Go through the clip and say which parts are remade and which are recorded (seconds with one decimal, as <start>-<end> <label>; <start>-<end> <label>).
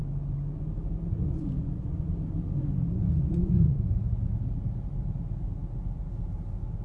0.0-1.2 recorded; 1.2-2.1 remade; 2.1-3.1 recorded; 3.1-3.9 remade; 3.9-6.8 recorded